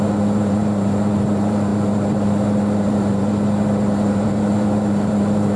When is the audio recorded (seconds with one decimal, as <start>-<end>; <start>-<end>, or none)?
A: none